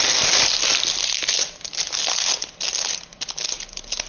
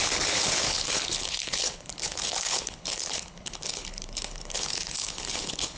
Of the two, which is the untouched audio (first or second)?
first